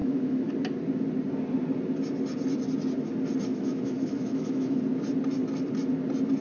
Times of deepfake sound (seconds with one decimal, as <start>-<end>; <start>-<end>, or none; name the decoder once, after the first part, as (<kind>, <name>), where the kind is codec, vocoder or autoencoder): 0.0-0.5 (autoencoder, DAC-VAE); 3.5-4.8